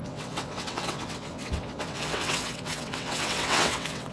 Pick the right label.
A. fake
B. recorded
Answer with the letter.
A